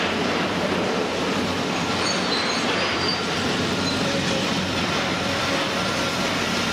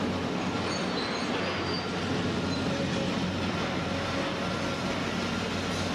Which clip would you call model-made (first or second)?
first